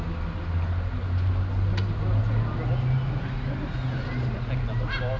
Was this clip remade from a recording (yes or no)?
no